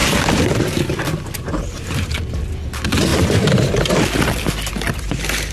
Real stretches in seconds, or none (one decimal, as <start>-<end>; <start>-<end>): 2.5-3.1; 4.7-5.5